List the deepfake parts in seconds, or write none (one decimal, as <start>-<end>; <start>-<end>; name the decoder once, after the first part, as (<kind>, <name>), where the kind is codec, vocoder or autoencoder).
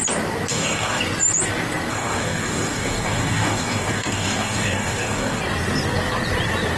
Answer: 0.5-1.0 (codec, DAC); 1.9-5.4